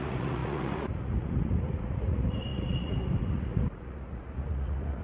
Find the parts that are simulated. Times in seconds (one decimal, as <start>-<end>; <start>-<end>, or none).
0.0-5.0